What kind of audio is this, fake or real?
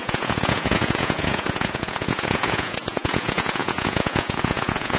fake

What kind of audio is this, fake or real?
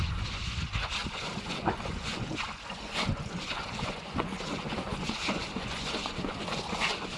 fake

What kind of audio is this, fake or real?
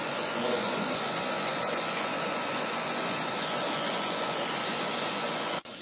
fake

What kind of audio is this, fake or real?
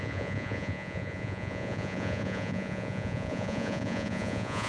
fake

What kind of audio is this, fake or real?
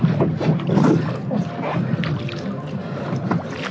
real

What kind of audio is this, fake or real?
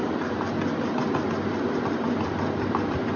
real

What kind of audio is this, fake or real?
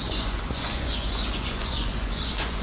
fake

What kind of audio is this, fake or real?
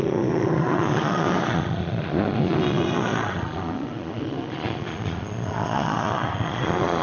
fake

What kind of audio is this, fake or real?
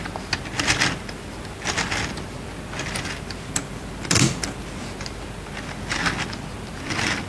real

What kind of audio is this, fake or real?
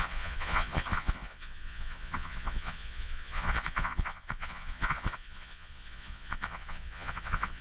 fake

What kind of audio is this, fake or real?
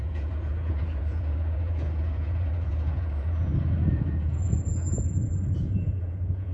fake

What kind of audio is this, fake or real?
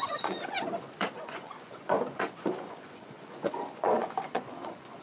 fake